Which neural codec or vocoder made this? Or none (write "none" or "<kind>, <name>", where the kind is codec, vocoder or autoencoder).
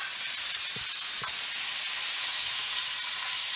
none